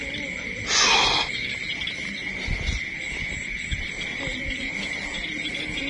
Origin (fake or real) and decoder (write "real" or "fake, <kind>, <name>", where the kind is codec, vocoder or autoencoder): real